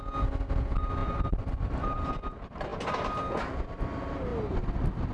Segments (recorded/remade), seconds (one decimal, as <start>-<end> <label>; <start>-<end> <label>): 0.0-1.0 recorded; 1.0-2.1 remade; 2.1-5.1 recorded